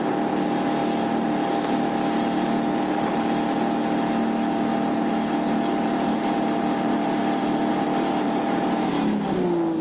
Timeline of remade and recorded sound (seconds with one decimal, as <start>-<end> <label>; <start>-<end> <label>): 0.0-4.7 recorded; 4.7-7.2 remade; 7.2-7.7 recorded; 7.7-8.9 remade; 8.9-9.8 recorded